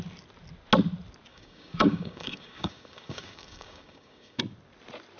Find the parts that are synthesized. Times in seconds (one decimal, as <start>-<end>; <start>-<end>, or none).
1.3-4.4